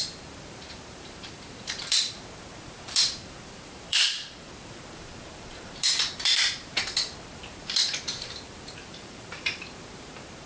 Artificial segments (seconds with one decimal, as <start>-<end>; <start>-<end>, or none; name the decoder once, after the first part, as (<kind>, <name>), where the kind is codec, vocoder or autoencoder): 0.0-10.5 (vocoder, BigVGAN v2)